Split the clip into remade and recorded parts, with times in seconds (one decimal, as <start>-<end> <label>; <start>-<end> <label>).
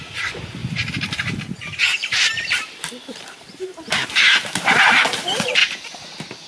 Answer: 0.0-5.6 remade; 5.6-6.5 recorded